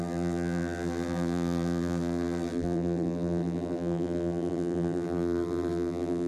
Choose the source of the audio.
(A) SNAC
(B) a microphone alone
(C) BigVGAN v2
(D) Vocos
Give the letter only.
C